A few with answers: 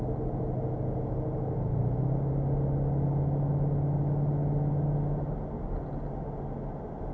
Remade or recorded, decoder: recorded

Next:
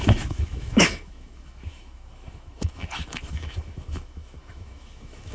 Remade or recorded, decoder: remade, autoencoder, DAC-VAE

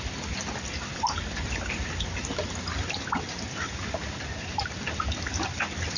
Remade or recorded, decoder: recorded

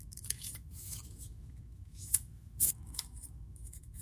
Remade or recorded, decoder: remade, autoencoder, DAC-VAE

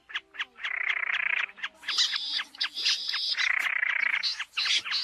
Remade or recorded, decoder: recorded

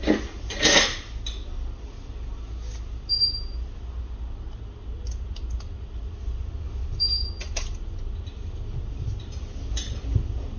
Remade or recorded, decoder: recorded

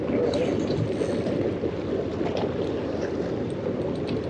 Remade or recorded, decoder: recorded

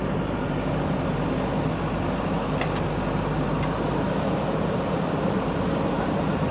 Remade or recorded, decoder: recorded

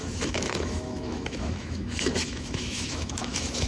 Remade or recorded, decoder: remade, autoencoder, DAC-VAE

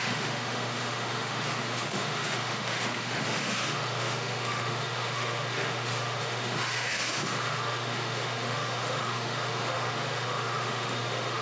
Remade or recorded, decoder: remade, autoencoder, DAC-VAE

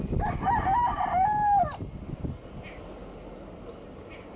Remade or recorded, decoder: recorded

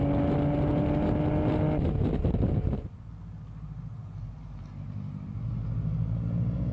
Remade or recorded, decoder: recorded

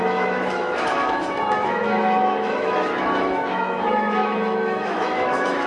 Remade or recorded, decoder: remade, autoencoder, DAC-VAE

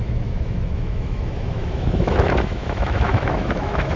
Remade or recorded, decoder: remade, autoencoder, DAC-VAE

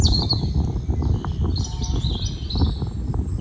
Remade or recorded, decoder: recorded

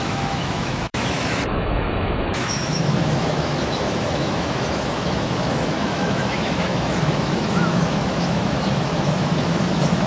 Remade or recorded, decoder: remade, autoencoder, DAC-VAE